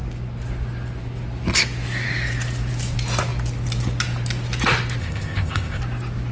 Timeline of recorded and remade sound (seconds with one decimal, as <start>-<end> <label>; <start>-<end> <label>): 0.0-5.0 recorded; 5.0-5.8 remade; 5.8-6.3 recorded